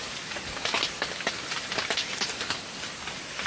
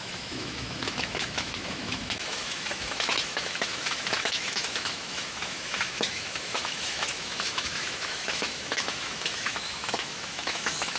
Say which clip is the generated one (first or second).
second